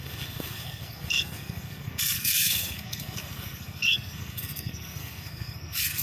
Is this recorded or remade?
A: remade